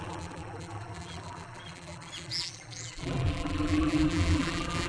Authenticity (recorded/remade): remade